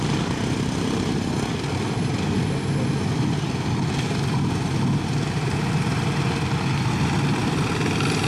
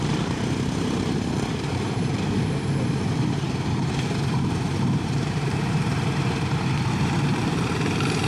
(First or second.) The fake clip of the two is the second